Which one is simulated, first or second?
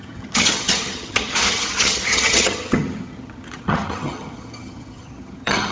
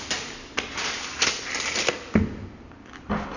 first